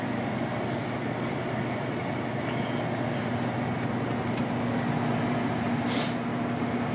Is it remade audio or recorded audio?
recorded